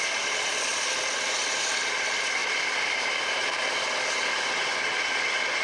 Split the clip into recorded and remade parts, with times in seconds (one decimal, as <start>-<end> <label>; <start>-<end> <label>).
0.0-2.4 recorded; 2.4-3.6 remade; 3.6-5.6 recorded